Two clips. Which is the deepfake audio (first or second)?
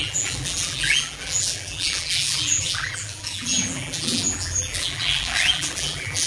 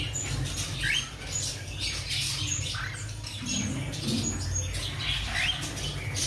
first